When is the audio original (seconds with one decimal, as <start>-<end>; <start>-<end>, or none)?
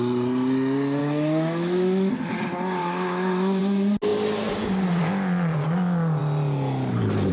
0.0-1.0; 2.1-2.8; 3.6-7.3